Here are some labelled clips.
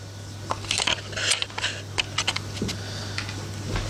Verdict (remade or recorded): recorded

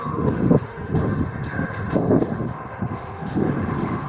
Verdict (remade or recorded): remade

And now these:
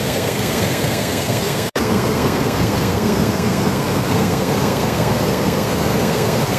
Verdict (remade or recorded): remade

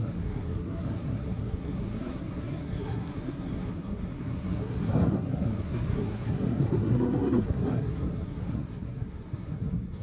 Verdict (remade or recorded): remade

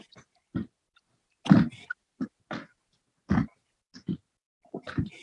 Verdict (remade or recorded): recorded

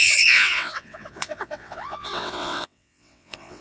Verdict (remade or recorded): remade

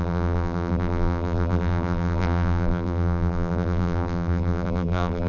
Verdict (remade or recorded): remade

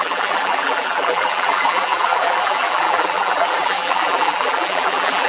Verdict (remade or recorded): remade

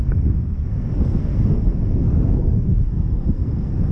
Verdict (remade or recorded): remade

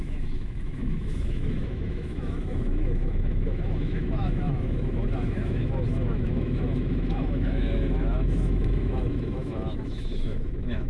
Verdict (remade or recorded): remade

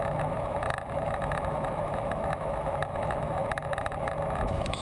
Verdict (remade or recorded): remade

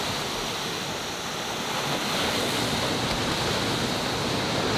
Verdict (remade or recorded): recorded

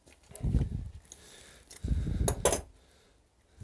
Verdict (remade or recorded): recorded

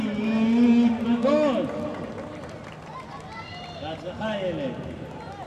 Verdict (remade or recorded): recorded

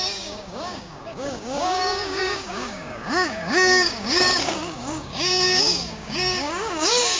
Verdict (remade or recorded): remade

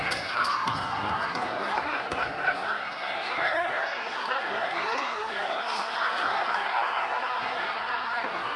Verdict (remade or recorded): remade